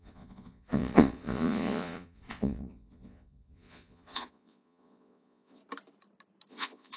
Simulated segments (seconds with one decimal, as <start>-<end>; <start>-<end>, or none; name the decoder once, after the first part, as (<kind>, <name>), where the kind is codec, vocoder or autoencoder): 0.0-5.6 (vocoder, Vocos); 6.5-7.0